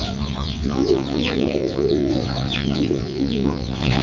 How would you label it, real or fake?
fake